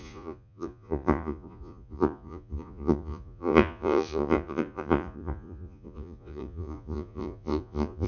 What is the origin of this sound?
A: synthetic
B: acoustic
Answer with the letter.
A